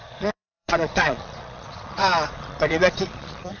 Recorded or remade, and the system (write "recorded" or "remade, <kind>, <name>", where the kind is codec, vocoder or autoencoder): remade, vocoder, Vocos